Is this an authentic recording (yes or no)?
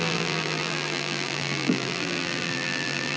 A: no